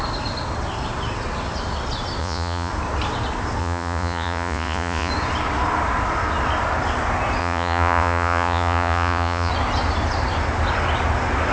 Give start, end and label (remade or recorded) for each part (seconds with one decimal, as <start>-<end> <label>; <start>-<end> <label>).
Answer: 0.0-2.2 recorded; 2.2-2.7 remade; 2.7-3.6 recorded; 3.6-5.1 remade; 5.1-7.4 recorded; 7.4-9.5 remade; 9.5-11.5 recorded